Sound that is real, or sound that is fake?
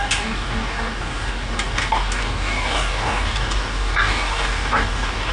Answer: fake